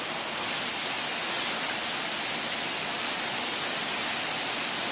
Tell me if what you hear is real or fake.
real